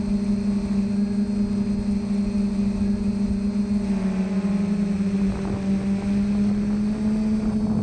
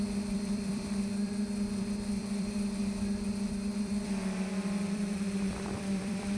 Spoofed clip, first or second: second